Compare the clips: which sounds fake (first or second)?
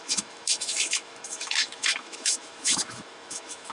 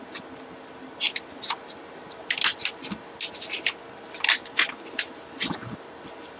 first